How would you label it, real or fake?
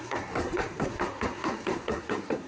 fake